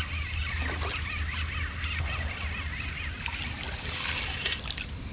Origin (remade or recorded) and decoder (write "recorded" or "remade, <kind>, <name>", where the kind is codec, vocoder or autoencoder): recorded